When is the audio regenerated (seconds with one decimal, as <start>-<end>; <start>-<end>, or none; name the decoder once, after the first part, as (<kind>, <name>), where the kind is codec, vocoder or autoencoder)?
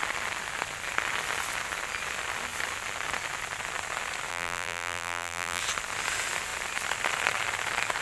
4.3-5.6 (vocoder, BigVGAN v2)